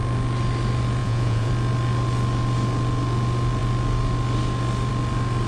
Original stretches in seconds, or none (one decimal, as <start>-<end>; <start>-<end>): 0.0-1.0; 1.5-5.5